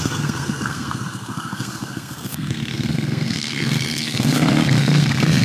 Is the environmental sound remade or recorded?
remade